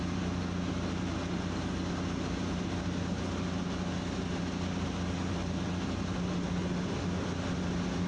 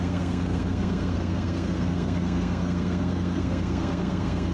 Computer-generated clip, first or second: second